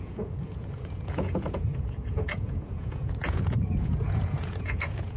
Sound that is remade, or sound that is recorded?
remade